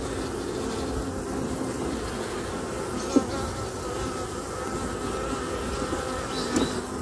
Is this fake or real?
real